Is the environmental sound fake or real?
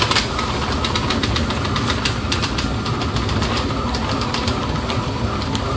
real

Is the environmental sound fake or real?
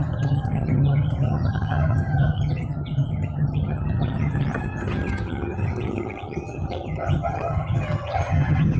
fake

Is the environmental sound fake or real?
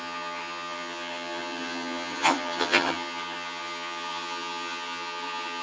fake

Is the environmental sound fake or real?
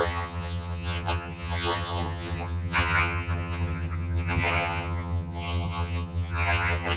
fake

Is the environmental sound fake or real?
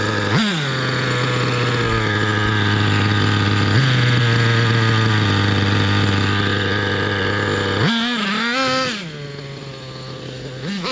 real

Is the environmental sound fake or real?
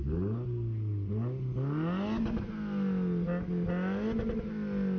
real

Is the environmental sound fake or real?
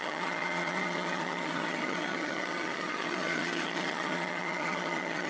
fake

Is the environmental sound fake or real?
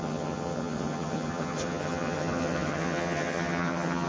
fake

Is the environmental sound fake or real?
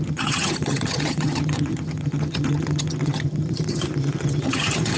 fake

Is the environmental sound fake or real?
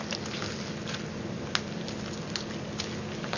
real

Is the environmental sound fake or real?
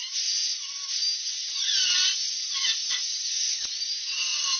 real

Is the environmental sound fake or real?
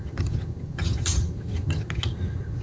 fake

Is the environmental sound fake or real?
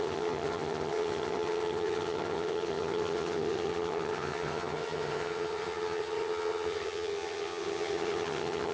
fake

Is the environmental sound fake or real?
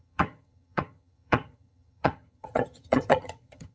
fake